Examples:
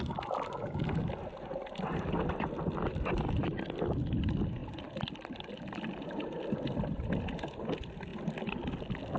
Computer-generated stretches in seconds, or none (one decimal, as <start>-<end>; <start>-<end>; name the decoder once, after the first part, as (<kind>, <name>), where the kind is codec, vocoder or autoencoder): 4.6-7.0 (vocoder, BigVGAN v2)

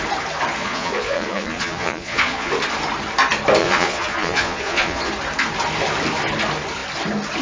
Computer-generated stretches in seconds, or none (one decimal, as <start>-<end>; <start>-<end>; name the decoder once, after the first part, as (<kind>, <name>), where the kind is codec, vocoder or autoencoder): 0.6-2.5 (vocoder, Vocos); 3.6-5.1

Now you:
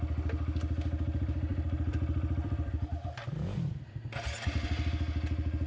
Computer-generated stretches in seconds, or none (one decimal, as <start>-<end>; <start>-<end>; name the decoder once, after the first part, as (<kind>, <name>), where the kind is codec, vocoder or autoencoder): 1.5-4.9 (vocoder, BigVGAN v2)

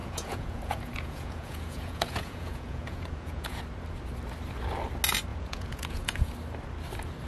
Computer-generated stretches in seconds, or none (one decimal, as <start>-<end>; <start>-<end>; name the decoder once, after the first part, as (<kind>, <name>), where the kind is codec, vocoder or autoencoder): 0.0-3.6 (vocoder, Vocos); 5.3-6.3

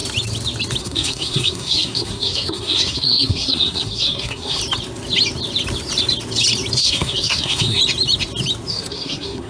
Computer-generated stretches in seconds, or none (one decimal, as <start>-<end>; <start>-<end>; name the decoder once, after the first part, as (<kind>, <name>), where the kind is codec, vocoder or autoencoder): 0.8-4.6 (codec, SNAC); 6.8-7.8; 8.7-9.5

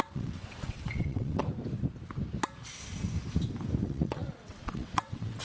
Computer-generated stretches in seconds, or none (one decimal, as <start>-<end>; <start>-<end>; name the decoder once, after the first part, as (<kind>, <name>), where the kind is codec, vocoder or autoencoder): 0.0-1.4 (vocoder, WaveNeXt); 3.8-5.4

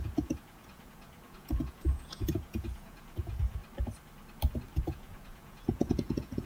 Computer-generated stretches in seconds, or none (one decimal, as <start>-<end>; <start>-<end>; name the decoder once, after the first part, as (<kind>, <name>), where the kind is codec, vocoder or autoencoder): 0.0-3.6 (vocoder, Vocos); 4.9-6.5